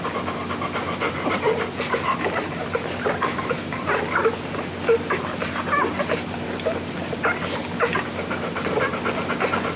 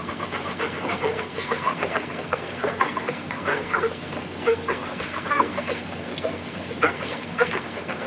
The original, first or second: first